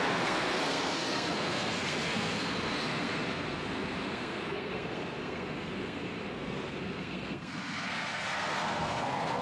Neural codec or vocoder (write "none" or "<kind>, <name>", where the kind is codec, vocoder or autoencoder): codec, SNAC